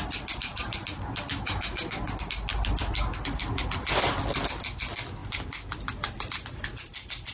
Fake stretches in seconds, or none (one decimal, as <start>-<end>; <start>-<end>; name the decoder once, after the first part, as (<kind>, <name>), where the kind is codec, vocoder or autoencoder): 1.3-2.0 (autoencoder, DAC-VAE)